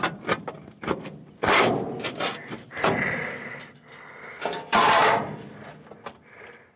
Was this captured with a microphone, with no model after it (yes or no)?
yes